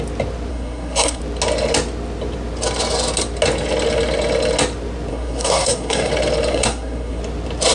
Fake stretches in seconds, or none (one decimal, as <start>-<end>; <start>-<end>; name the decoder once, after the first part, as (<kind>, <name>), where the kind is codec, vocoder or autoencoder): 0.5-1.2 (codec, SNAC); 5.1-6.1; 6.5-7.2